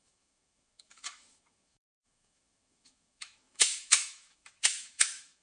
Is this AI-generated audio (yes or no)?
yes